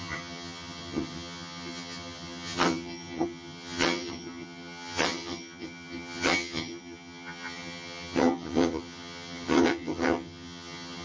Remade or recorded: remade